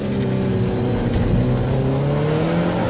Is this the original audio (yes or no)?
yes